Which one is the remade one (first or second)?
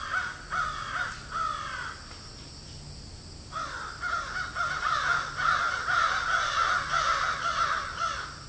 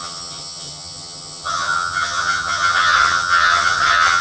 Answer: second